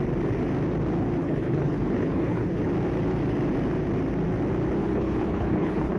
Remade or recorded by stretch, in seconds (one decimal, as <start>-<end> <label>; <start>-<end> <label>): 0.0-1.2 recorded; 1.2-2.6 remade; 2.6-4.8 recorded; 4.8-6.0 remade